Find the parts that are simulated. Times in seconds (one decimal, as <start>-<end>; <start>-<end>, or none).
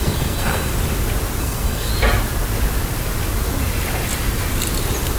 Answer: 0.0-0.7; 1.4-1.9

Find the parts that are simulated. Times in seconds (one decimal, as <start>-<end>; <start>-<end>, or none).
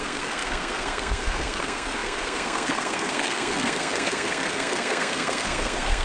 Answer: 0.0-6.0